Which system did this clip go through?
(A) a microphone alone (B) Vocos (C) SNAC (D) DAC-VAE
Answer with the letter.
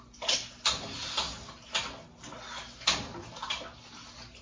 A